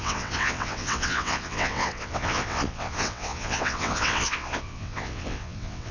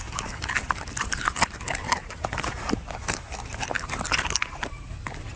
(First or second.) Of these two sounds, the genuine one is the second